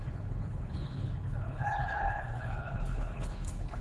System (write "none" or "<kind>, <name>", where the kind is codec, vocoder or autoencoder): codec, HILCodec